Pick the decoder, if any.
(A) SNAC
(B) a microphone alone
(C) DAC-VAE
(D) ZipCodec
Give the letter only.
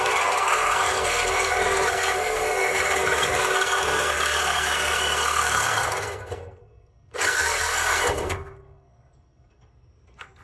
A